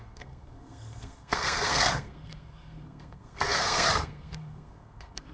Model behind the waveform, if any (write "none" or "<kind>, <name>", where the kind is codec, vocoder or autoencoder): codec, SNAC